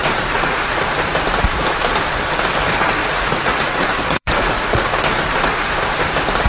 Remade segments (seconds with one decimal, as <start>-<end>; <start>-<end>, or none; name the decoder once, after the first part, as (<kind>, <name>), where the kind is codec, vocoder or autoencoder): 0.0-0.8 (vocoder, Vocos); 3.0-4.9